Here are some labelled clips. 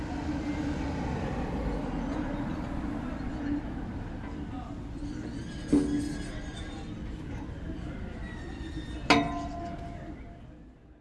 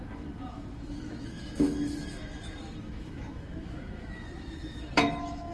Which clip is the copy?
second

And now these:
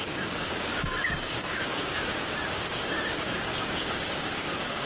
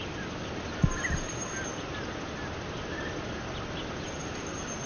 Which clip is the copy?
first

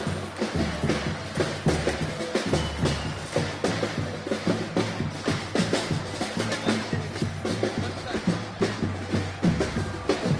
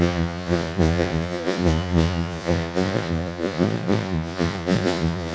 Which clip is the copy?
second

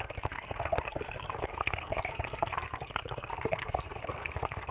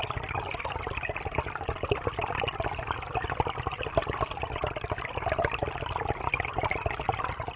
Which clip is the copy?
first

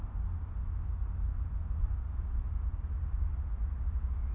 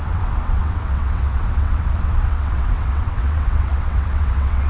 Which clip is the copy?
second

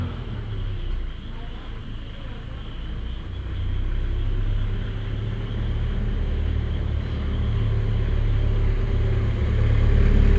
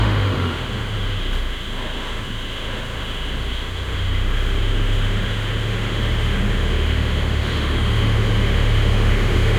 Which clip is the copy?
second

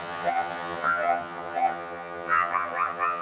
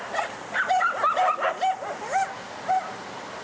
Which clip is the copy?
first